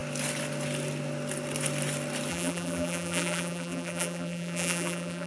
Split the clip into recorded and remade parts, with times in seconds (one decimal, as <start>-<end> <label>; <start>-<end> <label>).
0.0-2.3 recorded; 2.3-5.3 remade